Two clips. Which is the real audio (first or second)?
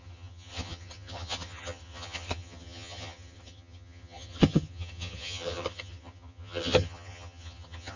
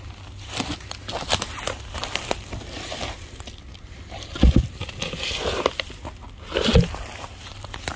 second